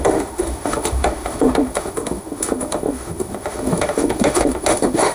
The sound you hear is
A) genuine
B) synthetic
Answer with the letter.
B